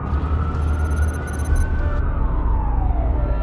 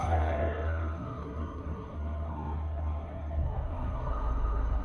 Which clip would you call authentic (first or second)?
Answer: first